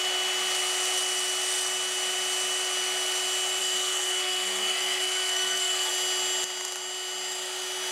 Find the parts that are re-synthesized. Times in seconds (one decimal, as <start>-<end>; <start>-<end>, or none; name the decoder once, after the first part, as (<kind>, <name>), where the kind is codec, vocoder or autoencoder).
3.6-5.9 (codec, SNAC)